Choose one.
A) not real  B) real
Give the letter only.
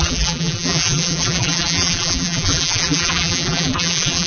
A